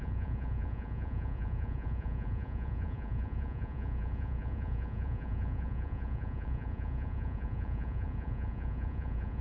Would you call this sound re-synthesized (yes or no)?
yes